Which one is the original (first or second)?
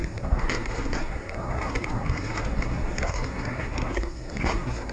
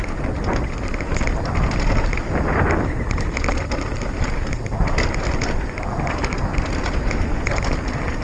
second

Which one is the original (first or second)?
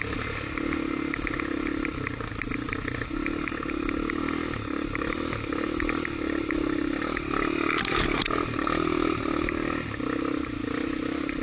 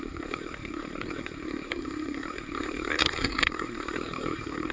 first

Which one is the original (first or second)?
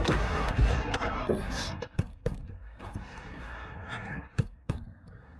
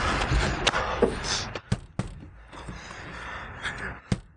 second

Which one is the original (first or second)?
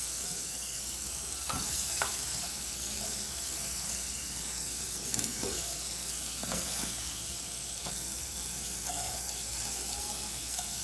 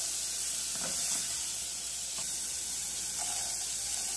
second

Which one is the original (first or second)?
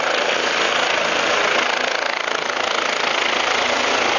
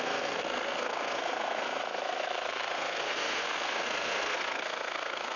first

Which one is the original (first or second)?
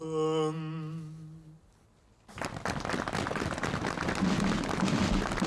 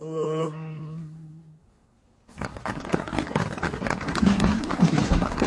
first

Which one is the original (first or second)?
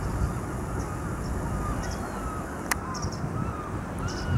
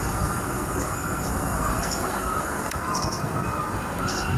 first